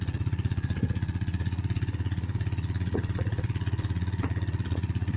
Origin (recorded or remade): remade